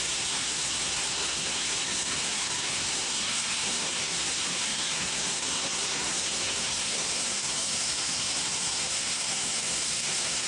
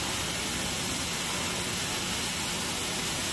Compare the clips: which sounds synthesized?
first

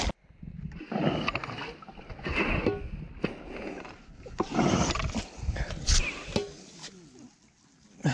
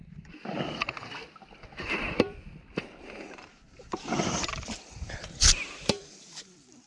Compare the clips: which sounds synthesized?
second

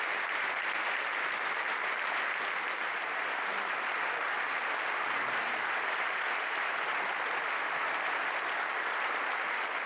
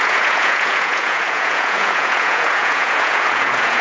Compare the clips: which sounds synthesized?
second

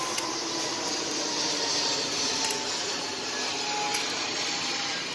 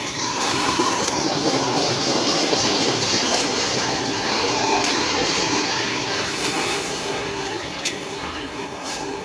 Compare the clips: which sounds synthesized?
second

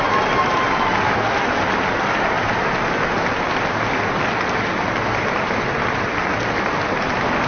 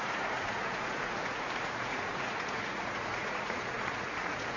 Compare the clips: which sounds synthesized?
second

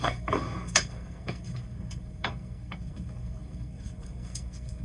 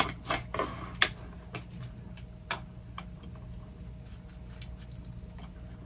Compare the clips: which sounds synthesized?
first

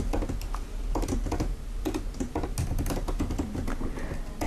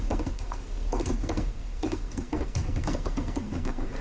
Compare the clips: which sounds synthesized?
second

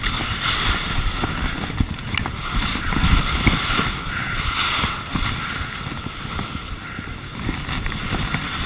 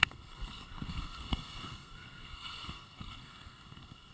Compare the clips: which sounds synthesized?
second